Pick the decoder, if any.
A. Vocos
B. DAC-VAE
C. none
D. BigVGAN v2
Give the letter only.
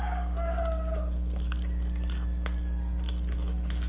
C